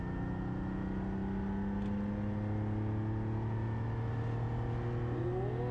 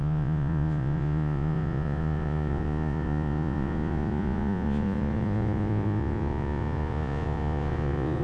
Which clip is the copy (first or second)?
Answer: second